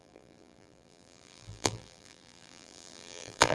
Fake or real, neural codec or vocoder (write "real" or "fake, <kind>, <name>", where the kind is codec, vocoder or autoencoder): fake, vocoder, BigVGAN v2